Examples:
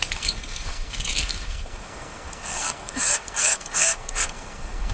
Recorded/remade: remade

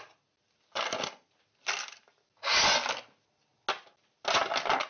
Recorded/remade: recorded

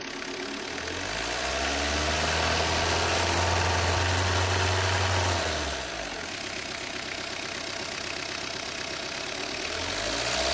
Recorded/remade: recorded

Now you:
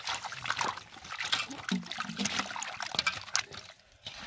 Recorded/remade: recorded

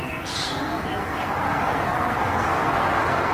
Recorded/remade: remade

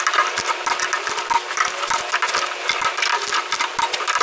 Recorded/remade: recorded